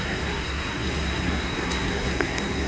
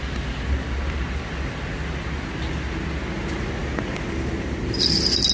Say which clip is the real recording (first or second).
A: second